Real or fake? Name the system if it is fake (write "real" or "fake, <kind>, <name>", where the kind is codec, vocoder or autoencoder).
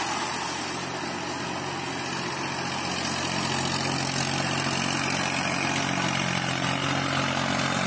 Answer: real